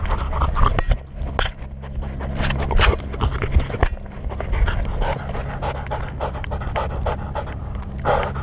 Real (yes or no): yes